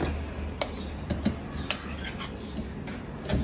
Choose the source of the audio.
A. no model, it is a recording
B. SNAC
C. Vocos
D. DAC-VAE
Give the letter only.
A